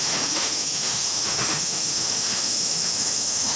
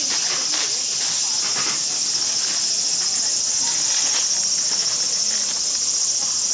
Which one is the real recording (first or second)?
second